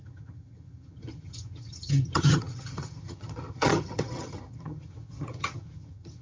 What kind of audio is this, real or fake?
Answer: fake